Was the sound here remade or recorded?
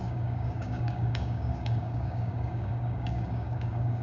remade